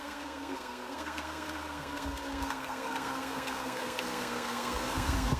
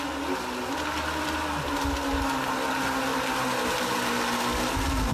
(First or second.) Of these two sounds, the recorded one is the second